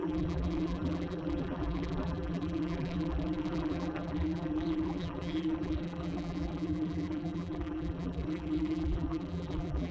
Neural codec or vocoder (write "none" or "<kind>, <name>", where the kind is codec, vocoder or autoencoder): vocoder, BigVGAN v2